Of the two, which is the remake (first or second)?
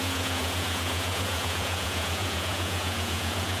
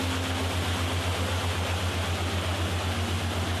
first